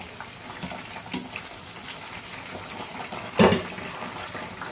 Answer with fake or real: real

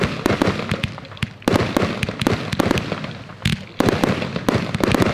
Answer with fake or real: real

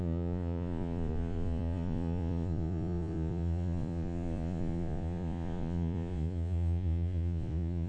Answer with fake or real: fake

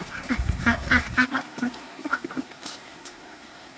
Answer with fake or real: fake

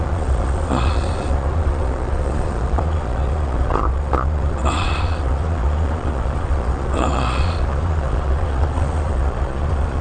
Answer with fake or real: fake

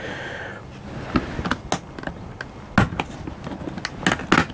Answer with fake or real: real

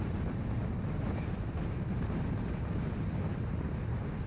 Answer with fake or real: real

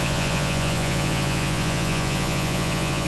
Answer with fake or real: fake